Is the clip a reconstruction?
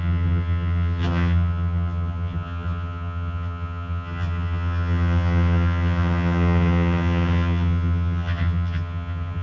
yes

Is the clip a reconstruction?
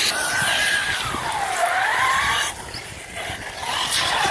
no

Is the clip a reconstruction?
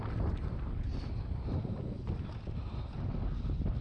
no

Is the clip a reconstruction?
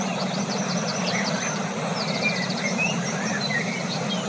no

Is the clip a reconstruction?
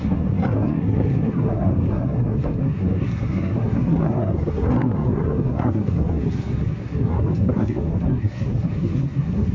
yes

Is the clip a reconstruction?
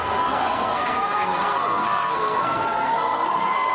yes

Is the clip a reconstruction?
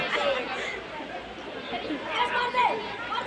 no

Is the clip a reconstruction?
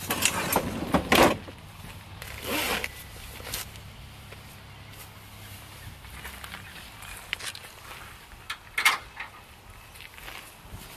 no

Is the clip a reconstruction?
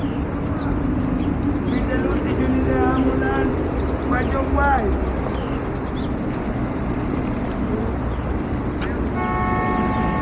no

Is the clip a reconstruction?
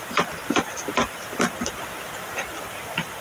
yes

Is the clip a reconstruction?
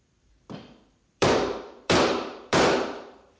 yes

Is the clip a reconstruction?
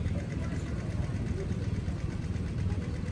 yes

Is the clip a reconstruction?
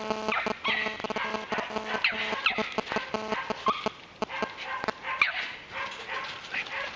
no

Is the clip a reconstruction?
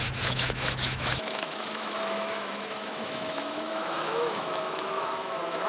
yes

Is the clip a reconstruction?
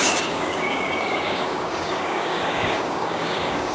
yes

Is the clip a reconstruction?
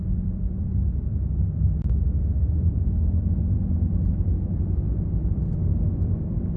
yes